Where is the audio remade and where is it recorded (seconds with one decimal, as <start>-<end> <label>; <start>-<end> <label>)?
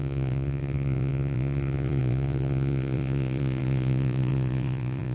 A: 0.0-5.1 remade